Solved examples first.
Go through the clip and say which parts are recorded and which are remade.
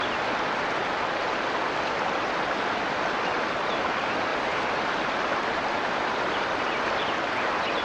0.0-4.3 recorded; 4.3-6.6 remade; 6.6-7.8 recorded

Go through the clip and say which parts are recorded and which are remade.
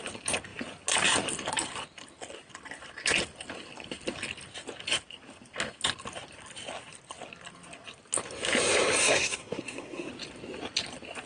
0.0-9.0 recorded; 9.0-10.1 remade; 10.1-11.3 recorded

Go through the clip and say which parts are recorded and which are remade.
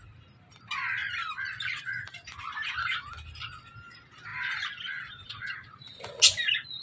0.0-1.0 recorded; 1.0-1.8 remade; 1.8-4.3 recorded; 4.3-6.1 remade; 6.1-6.8 recorded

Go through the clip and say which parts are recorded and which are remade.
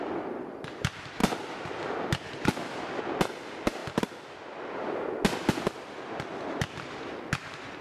0.0-7.8 recorded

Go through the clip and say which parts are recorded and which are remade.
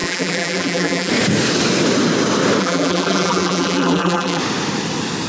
0.0-1.1 remade; 1.1-2.6 recorded; 2.6-4.4 remade; 4.4-5.3 recorded